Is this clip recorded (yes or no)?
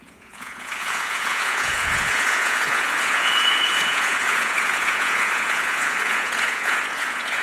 no